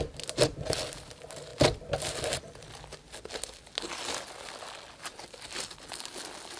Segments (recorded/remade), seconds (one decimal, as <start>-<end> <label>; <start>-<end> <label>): 0.0-6.6 recorded

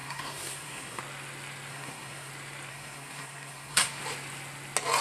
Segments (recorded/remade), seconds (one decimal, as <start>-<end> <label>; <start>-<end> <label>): 0.0-1.0 remade; 1.0-1.7 recorded; 1.7-2.3 remade; 2.3-2.7 recorded; 2.7-4.0 remade; 4.0-5.0 recorded

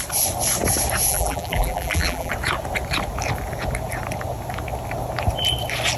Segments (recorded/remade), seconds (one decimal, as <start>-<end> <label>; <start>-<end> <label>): 0.0-1.1 recorded; 1.1-2.3 remade; 2.3-6.0 recorded

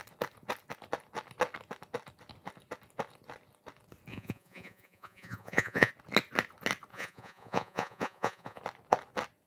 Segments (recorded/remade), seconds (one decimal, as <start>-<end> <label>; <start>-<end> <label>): 0.0-4.1 recorded; 4.1-5.9 remade; 5.9-6.9 recorded; 6.9-8.6 remade; 8.6-9.5 recorded

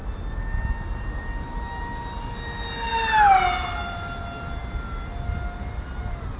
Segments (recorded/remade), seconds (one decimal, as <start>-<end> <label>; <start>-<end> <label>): 0.0-6.4 recorded

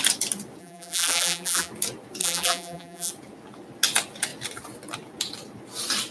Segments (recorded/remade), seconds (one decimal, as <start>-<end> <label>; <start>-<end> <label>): 0.0-0.6 recorded; 0.6-1.7 remade; 1.7-2.2 recorded; 2.2-3.1 remade; 3.1-6.1 recorded

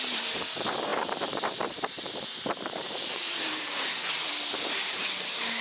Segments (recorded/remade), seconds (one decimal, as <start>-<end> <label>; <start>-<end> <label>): 0.0-5.6 remade

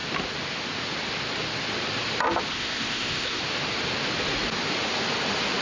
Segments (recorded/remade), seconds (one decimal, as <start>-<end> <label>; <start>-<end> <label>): 0.0-2.5 recorded; 2.5-3.4 remade; 3.4-5.6 recorded